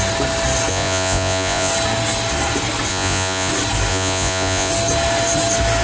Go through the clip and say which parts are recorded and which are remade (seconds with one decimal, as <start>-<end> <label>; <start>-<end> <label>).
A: 0.0-0.7 recorded; 0.7-1.7 remade; 1.7-2.9 recorded; 2.9-3.5 remade; 3.5-3.9 recorded; 3.9-4.7 remade; 4.7-5.8 recorded